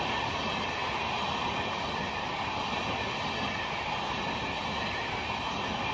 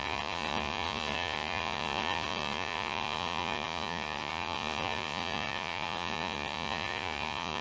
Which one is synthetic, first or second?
second